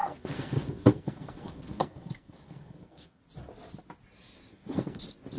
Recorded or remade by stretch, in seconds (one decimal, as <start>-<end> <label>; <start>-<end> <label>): 0.0-3.2 remade; 3.2-4.5 recorded; 4.5-5.0 remade; 5.0-5.4 recorded